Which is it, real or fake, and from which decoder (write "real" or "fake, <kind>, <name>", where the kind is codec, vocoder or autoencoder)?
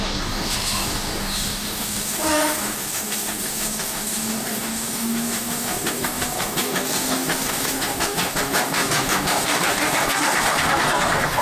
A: fake, codec, DAC